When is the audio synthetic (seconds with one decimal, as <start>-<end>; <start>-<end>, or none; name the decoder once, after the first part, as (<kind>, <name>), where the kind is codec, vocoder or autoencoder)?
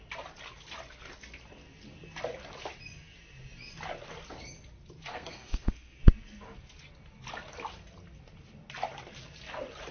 5.1-6.0 (codec, SNAC)